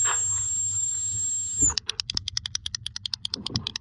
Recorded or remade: recorded